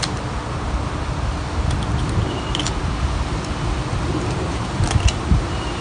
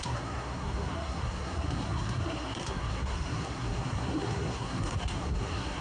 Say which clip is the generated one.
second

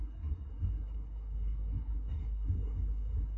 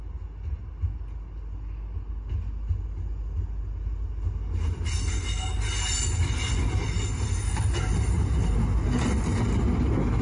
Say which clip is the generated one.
first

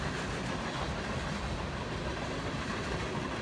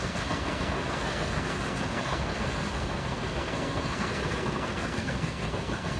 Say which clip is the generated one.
second